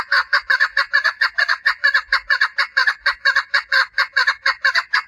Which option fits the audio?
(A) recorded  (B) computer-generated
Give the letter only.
B